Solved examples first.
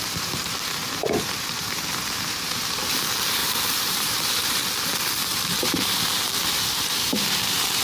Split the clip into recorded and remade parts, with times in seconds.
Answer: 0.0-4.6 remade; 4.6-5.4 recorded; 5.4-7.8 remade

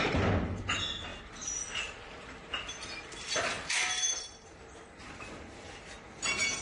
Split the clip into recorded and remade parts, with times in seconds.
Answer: 0.0-6.6 recorded

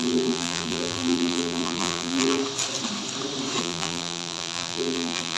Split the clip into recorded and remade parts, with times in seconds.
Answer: 0.0-2.4 remade; 2.4-3.6 recorded; 3.6-5.4 remade

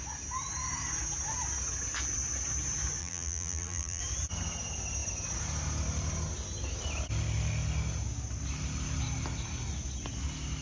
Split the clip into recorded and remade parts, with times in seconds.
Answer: 0.0-3.0 recorded; 3.0-4.0 remade; 4.0-10.6 recorded

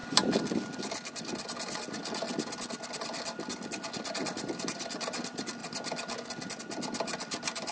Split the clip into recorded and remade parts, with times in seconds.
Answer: 0.0-5.6 remade; 5.6-6.6 recorded; 6.6-7.7 remade